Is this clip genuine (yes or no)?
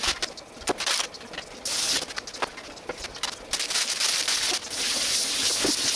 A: yes